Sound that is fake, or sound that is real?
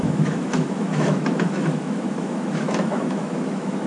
fake